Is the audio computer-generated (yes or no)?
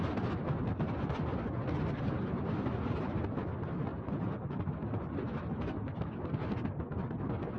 no